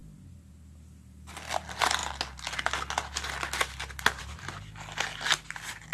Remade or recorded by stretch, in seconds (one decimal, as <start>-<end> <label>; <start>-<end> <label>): 0.0-5.9 recorded